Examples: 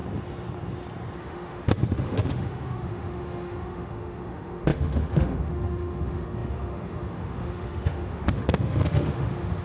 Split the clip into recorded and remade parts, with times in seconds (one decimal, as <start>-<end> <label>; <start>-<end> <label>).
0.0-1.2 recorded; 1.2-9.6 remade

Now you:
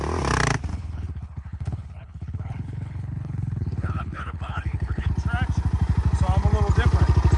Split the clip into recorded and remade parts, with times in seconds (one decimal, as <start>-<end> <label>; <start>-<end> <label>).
0.0-0.7 recorded; 0.7-5.1 remade; 5.1-7.4 recorded

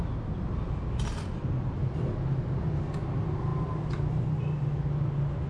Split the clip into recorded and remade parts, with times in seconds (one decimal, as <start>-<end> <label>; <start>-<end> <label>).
0.0-5.5 recorded

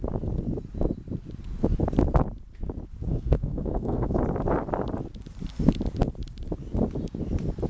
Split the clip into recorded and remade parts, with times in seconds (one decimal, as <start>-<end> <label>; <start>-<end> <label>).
0.0-3.1 recorded; 3.1-4.2 remade; 4.2-7.7 recorded

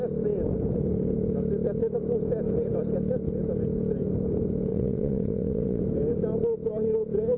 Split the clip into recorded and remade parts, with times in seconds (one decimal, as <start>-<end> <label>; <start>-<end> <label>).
0.0-4.7 recorded; 4.7-5.8 remade; 5.8-7.4 recorded